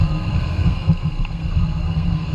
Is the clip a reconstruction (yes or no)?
yes